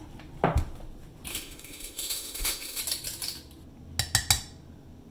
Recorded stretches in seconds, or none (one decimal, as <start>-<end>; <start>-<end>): 0.0-1.3; 2.8-5.1